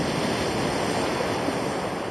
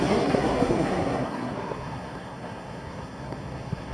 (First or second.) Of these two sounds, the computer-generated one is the second